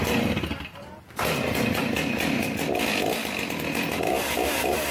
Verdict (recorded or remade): recorded